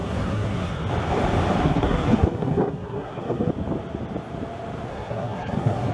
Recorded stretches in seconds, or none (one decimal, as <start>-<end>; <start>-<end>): 0.7-1.6; 3.5-4.9